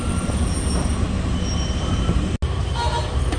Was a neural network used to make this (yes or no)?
no